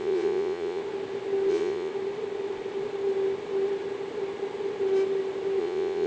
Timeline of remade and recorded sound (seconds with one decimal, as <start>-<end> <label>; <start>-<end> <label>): 0.0-0.8 remade; 0.8-1.5 recorded; 1.5-1.9 remade; 1.9-5.6 recorded; 5.6-6.1 remade